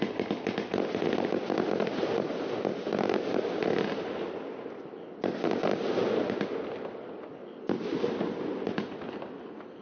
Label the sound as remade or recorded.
recorded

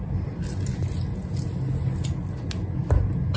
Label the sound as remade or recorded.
recorded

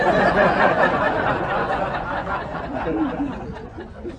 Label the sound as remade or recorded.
remade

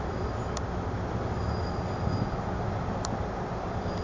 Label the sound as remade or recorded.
recorded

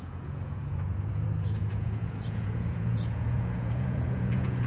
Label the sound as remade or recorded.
remade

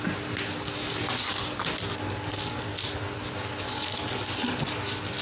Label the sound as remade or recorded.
recorded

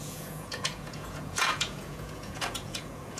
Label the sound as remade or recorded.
remade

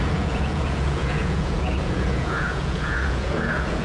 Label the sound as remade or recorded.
remade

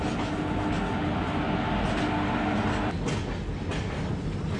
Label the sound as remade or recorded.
recorded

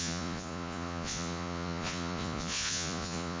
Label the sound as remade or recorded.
remade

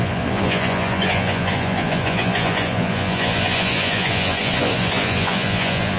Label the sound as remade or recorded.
remade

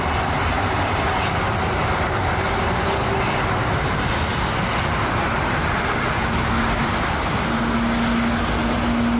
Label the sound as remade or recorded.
recorded